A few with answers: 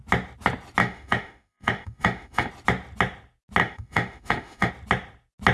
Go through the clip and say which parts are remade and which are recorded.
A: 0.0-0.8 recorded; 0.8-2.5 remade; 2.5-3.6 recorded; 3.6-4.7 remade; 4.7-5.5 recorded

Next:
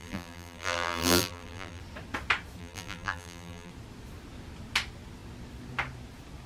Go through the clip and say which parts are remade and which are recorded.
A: 0.0-1.8 remade; 1.8-2.6 recorded; 2.6-3.7 remade; 3.7-6.5 recorded

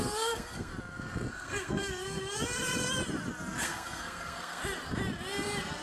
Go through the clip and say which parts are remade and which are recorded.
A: 0.0-0.7 remade; 0.7-1.3 recorded; 1.3-2.4 remade; 2.4-3.6 recorded; 3.6-4.6 remade; 4.6-5.8 recorded